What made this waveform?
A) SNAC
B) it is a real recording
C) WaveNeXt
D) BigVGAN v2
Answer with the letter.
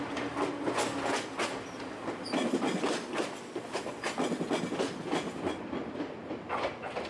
B